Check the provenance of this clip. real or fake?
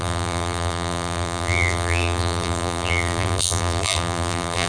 fake